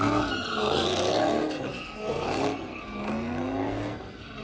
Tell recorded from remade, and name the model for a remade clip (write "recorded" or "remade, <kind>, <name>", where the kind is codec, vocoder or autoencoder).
remade, codec, SNAC